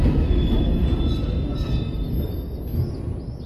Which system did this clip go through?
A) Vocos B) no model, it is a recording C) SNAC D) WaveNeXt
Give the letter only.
B